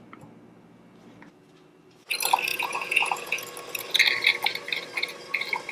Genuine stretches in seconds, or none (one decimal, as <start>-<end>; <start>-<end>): 0.0-2.5; 3.4-5.7

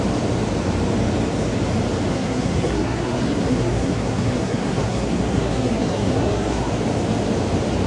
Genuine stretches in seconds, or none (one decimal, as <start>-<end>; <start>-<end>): 0.0-2.1; 6.7-7.9